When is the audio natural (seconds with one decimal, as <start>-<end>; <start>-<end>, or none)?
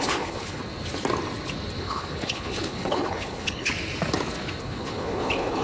0.6-1.8; 3.7-4.6